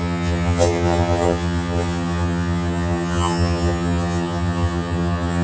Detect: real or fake fake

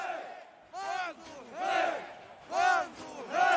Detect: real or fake real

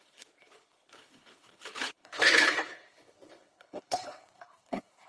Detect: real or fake fake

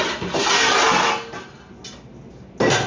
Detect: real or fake real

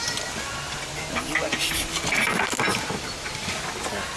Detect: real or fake real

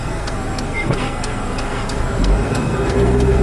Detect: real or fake fake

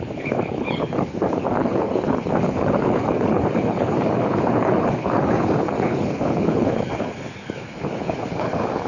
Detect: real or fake fake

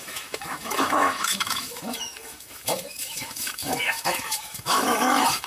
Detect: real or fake fake